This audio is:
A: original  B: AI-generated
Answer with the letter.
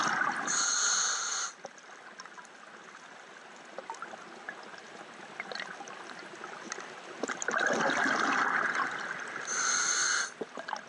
A